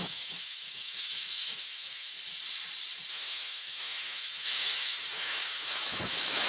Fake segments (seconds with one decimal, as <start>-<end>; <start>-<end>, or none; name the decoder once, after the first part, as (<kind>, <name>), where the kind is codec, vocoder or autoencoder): 0.0-2.1 (autoencoder, DAC-VAE); 3.1-6.5